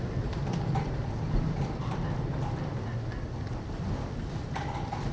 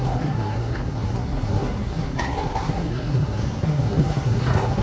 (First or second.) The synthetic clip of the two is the second